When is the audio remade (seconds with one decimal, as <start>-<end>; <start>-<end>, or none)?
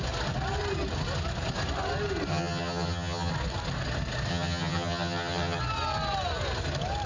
2.3-3.3; 4.3-5.6